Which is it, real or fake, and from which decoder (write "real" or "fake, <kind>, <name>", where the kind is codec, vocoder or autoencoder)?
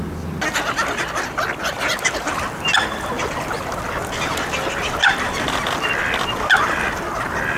real